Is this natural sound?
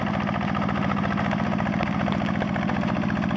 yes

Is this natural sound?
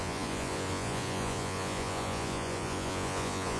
no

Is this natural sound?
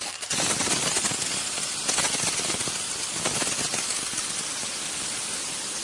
yes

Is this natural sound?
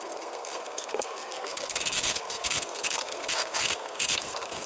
no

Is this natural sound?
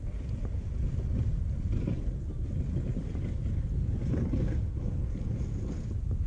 yes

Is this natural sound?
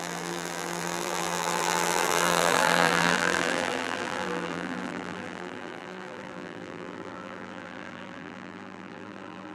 no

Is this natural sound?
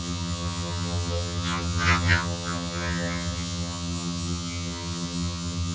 no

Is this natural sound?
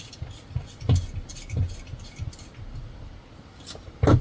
yes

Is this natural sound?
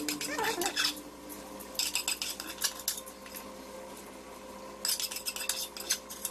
yes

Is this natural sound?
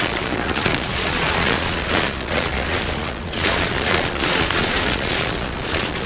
no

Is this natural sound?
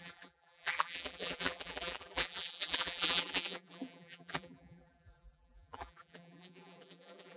no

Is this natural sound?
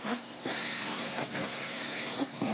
no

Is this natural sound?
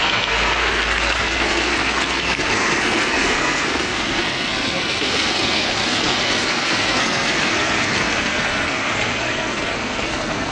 no